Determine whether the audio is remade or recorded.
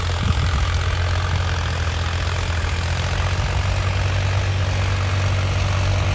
recorded